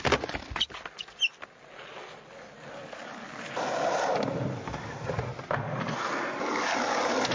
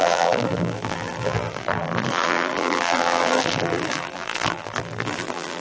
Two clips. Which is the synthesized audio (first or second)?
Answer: second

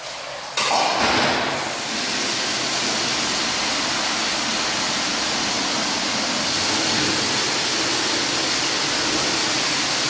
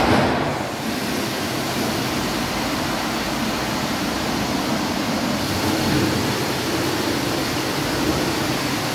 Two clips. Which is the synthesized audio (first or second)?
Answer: second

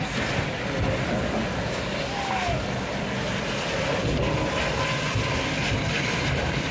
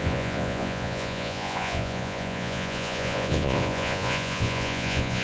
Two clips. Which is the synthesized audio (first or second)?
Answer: second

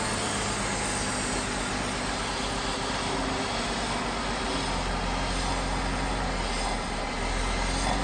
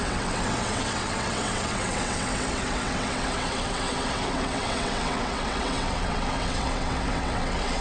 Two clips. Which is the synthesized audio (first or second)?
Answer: second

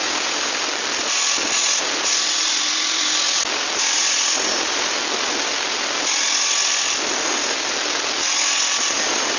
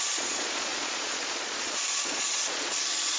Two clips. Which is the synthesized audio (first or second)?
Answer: second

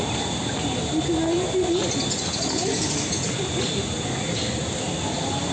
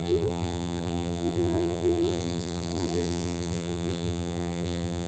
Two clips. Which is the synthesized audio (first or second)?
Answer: second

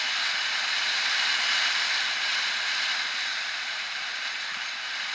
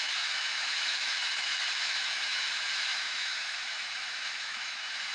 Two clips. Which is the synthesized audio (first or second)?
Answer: second